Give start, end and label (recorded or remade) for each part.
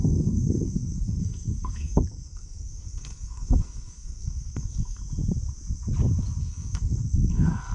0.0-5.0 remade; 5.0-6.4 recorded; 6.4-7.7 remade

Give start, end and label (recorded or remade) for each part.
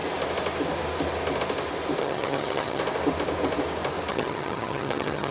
0.0-2.0 recorded; 2.0-2.8 remade; 2.8-4.1 recorded; 4.1-5.3 remade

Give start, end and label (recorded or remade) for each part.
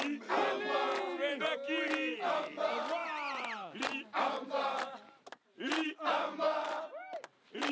0.0-3.0 recorded; 3.0-7.7 remade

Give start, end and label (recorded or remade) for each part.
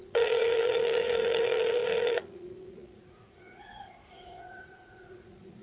0.0-5.6 remade